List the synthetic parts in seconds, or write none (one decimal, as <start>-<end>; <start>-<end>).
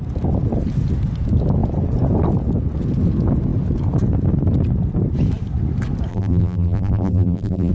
6.1-7.7